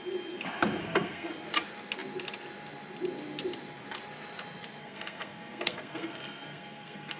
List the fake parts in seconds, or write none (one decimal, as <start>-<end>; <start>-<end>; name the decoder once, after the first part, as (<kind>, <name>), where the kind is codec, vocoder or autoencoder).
0.8-1.3 (codec, SNAC); 4.8-7.2